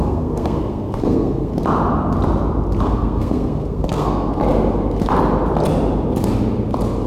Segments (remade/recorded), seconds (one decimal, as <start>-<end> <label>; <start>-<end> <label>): 0.0-1.5 remade; 1.5-2.8 recorded; 2.8-4.4 remade; 4.4-7.1 recorded